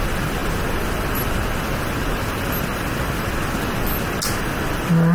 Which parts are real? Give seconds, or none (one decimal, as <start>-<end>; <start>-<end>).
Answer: 0.0-5.1